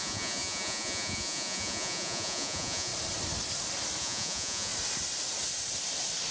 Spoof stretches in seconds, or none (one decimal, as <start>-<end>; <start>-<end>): 0.0-2.9; 4.0-4.7